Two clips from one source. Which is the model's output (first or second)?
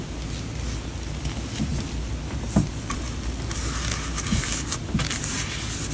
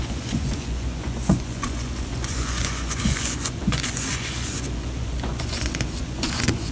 second